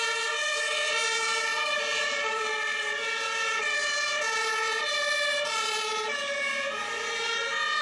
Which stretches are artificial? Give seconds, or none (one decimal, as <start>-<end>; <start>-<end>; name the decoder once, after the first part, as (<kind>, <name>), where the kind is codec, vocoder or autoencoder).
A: 1.3-2.8 (vocoder, BigVGAN v2); 4.9-6.5